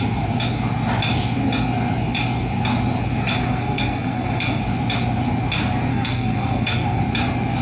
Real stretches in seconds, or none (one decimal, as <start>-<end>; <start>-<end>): 0.0-3.5; 4.6-5.9; 7.0-7.6